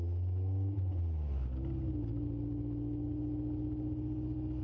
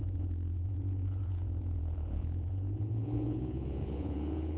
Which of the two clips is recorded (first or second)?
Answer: first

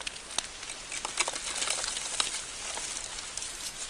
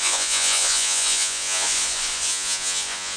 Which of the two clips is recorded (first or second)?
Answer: first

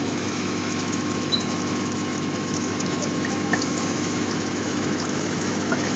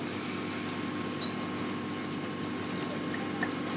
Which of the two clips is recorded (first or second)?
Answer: second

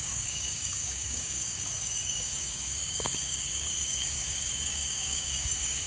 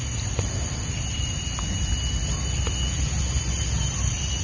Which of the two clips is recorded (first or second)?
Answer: second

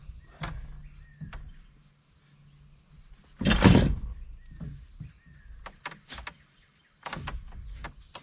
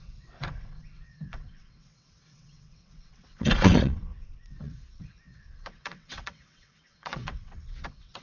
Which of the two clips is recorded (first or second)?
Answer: first